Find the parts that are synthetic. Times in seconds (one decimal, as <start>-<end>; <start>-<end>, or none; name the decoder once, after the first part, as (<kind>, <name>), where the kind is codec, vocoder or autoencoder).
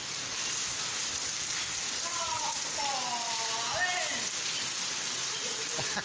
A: 2.1-2.8 (vocoder, Vocos)